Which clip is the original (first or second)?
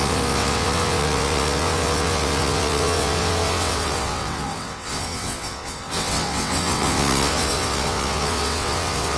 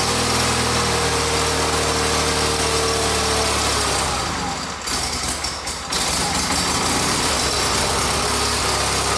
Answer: second